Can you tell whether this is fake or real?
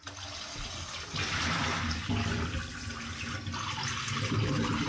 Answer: real